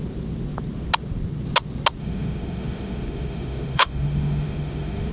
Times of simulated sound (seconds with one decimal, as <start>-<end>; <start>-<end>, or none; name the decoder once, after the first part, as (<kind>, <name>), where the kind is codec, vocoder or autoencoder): 2.0-5.1 (autoencoder, DAC-VAE)